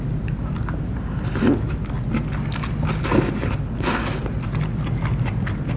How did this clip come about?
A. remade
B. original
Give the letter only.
B